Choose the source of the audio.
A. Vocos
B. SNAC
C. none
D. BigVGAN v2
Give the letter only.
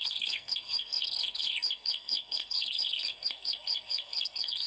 B